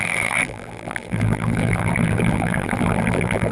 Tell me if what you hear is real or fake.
fake